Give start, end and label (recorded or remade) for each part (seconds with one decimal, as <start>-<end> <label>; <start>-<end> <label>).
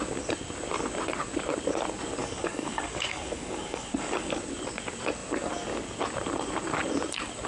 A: 0.0-2.2 recorded; 2.2-4.3 remade; 4.3-7.5 recorded